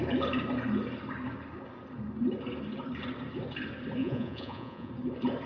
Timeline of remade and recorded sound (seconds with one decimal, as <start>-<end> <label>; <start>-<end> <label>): 0.0-4.0 recorded; 4.0-4.9 remade; 4.9-5.5 recorded